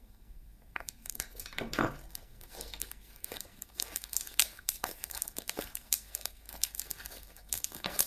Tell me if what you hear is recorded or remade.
remade